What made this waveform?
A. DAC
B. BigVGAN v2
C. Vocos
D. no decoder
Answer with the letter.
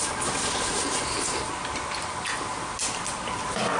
D